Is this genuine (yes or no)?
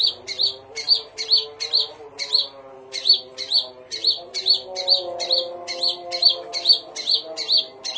yes